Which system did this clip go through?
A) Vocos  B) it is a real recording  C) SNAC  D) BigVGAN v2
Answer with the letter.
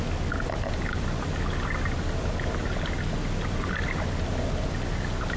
B